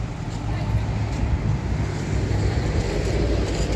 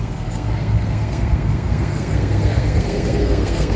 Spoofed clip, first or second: second